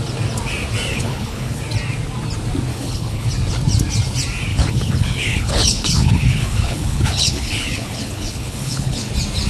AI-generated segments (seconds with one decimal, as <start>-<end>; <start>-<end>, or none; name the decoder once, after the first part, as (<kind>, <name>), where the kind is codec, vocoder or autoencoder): 0.9-1.6 (codec, HILCodec); 2.7-3.3; 4.5-9.1